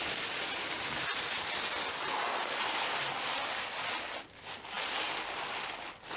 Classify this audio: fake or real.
real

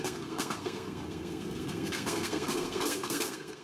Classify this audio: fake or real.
fake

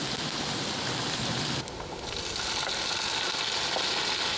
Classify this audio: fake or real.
real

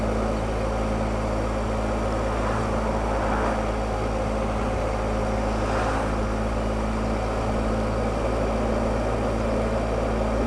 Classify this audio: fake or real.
real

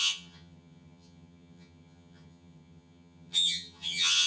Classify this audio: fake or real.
fake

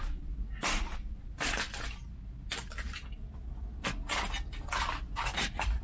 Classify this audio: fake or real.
real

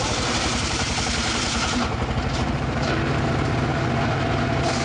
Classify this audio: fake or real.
fake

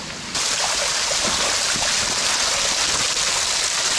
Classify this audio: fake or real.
real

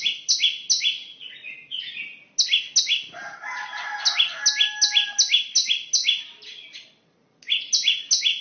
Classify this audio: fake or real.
real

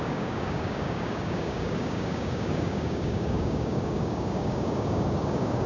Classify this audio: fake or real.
fake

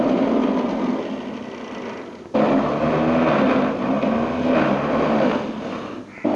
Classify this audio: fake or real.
real